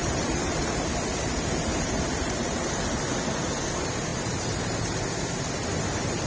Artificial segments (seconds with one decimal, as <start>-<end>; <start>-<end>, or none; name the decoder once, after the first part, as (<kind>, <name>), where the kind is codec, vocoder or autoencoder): 0.0-2.7 (vocoder, BigVGAN v2); 4.1-5.0